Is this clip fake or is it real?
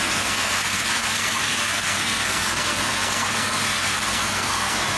fake